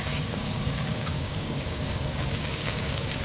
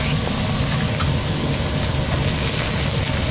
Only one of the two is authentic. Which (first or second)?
second